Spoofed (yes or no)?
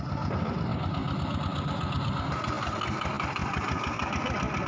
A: no